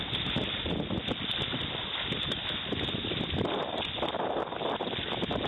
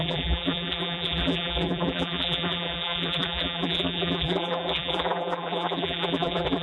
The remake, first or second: second